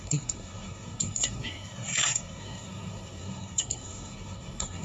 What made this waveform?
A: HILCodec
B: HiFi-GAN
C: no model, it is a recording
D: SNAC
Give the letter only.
D